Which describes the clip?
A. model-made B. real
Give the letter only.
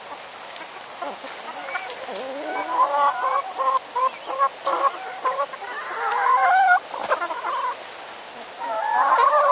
B